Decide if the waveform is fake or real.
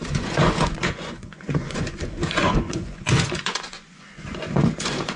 fake